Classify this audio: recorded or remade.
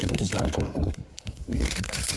remade